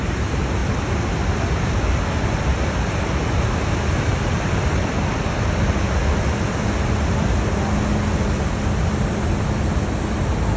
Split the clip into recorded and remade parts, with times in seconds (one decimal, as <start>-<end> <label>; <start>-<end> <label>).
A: 0.0-4.1 recorded; 4.1-4.9 remade; 4.9-10.6 recorded